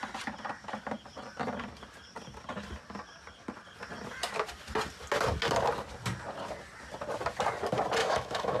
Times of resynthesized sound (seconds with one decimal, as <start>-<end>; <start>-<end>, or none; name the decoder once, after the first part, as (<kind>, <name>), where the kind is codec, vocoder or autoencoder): 8.0-8.6 (autoencoder, DAC-VAE)